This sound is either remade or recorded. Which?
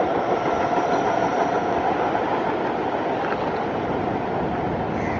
recorded